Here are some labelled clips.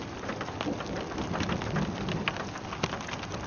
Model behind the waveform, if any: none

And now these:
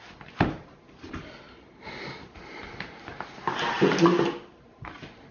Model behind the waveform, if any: none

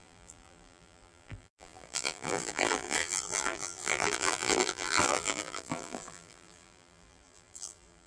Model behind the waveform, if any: vocoder, BigVGAN v2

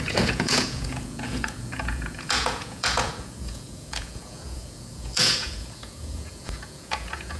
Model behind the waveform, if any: vocoder, Vocos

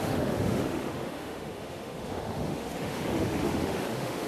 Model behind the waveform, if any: autoencoder, DAC-VAE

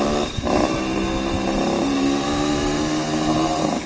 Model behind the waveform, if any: vocoder, BigVGAN v2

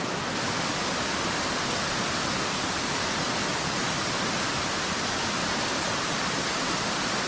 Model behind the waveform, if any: none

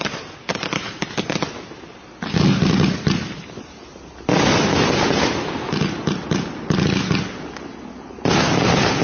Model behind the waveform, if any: none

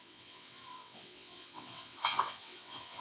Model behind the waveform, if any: vocoder, WaveNeXt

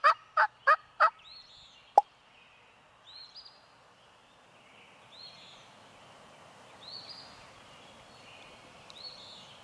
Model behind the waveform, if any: none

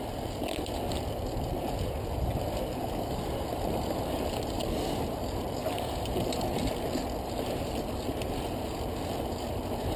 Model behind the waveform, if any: none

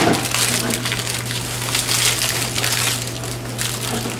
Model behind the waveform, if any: none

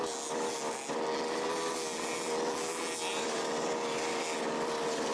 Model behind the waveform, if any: none